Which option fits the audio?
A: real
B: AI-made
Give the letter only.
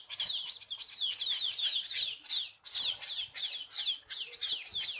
A